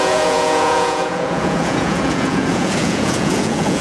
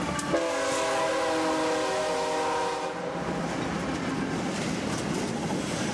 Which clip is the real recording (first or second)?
second